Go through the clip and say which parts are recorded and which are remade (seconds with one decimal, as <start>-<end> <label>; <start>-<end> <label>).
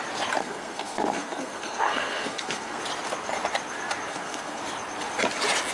0.0-0.4 recorded; 0.4-2.8 remade; 2.8-4.1 recorded; 4.1-4.6 remade; 4.6-5.7 recorded